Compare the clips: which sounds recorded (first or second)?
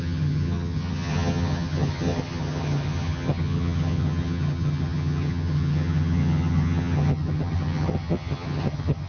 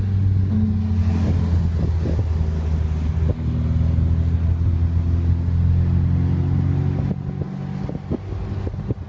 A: second